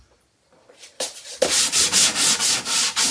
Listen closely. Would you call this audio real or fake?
fake